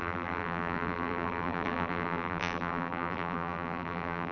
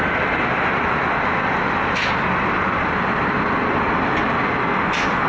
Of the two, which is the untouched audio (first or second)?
second